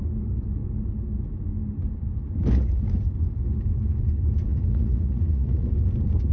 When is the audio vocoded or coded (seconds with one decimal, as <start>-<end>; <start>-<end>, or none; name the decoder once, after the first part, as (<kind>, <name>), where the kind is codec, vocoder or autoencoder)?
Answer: 4.5-5.7 (vocoder, Vocos)